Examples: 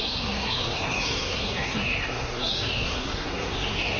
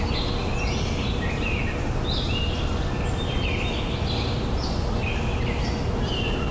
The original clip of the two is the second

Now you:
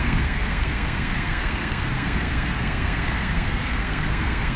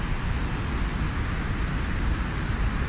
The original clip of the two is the second